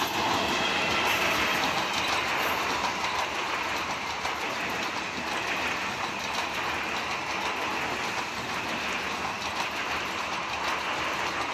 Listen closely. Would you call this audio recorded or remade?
recorded